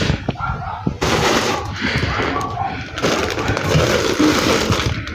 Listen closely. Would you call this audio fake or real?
real